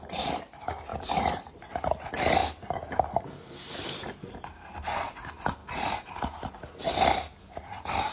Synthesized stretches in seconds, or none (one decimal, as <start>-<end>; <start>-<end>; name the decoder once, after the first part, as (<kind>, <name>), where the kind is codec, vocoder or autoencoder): 0.9-1.7 (vocoder, BigVGAN v2)